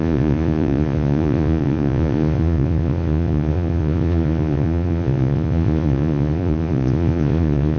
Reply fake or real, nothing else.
fake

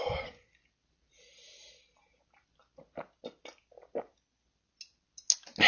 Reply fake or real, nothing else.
real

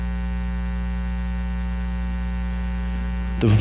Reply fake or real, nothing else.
real